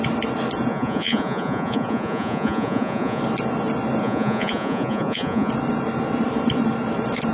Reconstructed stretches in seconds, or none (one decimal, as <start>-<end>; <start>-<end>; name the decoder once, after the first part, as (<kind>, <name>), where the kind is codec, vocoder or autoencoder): 0.7-3.2 (vocoder, Vocos); 4.0-5.5

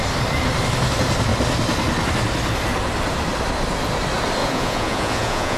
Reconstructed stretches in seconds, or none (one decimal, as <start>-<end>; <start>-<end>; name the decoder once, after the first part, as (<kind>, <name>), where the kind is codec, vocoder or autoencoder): 4.4-5.6 (vocoder, Vocos)

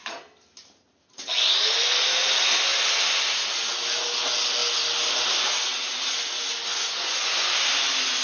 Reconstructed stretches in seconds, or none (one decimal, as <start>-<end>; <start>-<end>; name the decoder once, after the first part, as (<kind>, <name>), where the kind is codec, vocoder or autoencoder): 6.7-7.5 (vocoder, Vocos)

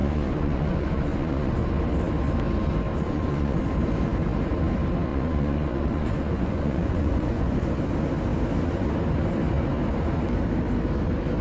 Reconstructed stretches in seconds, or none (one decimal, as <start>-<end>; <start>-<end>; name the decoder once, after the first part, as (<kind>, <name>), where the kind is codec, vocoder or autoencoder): 0.0-1.7 (vocoder, Vocos); 2.9-3.6; 5.1-7.7